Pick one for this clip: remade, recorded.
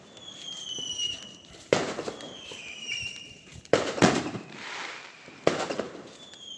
remade